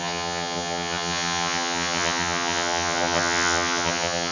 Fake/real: fake